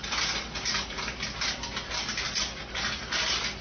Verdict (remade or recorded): recorded